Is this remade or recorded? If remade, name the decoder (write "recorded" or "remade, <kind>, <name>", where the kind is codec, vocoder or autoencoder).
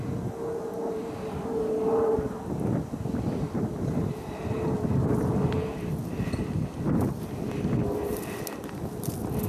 recorded